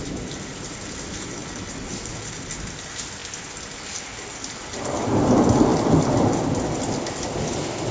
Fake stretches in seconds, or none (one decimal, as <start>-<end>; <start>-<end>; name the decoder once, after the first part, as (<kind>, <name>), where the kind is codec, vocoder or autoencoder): 1.4-2.1 (vocoder, BigVGAN v2); 3.2-3.8